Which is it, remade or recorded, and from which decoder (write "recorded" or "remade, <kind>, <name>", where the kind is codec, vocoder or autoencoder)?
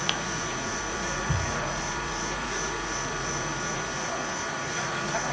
remade, vocoder, Vocos